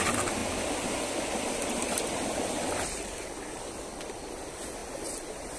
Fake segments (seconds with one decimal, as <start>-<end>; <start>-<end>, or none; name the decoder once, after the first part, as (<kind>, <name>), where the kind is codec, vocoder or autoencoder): none